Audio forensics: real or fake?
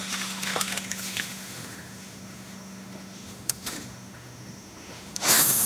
fake